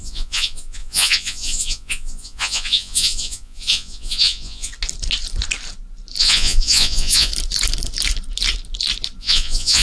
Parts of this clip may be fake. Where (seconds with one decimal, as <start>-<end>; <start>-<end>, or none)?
0.0-4.7; 6.2-7.3; 9.2-9.8